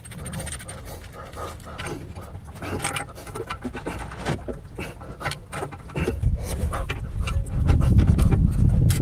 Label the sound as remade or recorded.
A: recorded